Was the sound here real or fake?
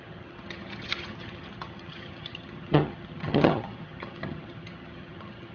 fake